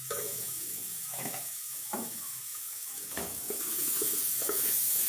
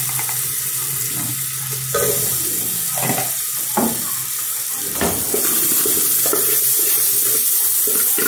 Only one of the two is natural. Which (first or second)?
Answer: second